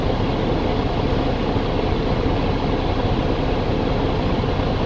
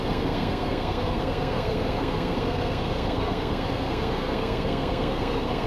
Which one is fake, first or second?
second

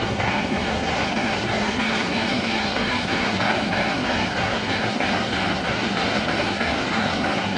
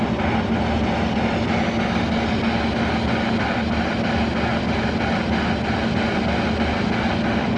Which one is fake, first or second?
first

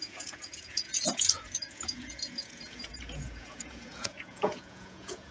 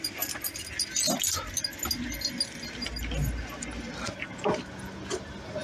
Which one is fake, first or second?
first